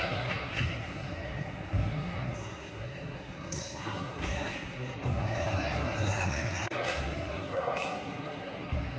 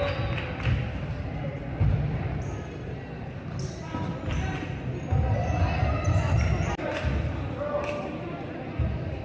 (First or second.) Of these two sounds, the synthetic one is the first